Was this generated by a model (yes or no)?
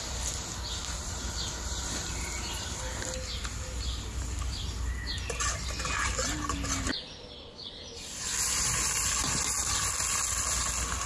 no